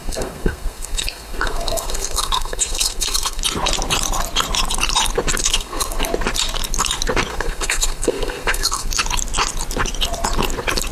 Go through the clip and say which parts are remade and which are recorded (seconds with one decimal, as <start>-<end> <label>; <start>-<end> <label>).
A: 0.0-3.4 remade; 3.4-5.5 recorded; 5.5-6.0 remade; 6.0-7.3 recorded; 7.3-8.9 remade; 8.9-10.9 recorded